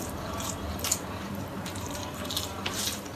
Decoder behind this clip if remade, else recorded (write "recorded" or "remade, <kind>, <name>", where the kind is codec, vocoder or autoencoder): remade, vocoder, BigVGAN v2